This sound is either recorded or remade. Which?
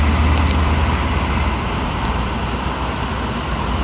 recorded